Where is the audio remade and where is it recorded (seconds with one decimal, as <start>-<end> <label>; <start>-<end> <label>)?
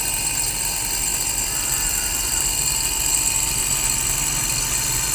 0.0-5.1 recorded